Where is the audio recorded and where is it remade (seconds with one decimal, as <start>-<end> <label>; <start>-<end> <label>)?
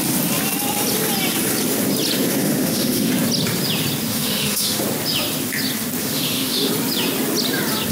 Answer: 0.0-2.4 recorded; 2.4-3.1 remade; 3.1-4.1 recorded; 4.1-4.8 remade; 4.8-6.0 recorded; 6.0-6.7 remade; 6.7-7.9 recorded